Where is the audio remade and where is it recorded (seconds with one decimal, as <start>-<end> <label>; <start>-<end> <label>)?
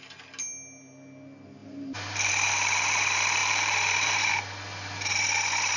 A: 0.0-1.6 recorded; 1.6-2.3 remade; 2.3-3.4 recorded; 3.4-4.3 remade; 4.3-5.8 recorded